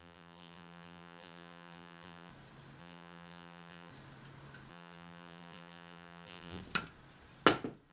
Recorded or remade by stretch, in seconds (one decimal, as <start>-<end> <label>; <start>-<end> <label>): 0.0-2.3 remade; 2.3-2.8 recorded; 2.8-3.9 remade; 3.9-4.7 recorded; 4.7-6.6 remade; 6.6-7.9 recorded